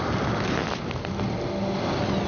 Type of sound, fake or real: real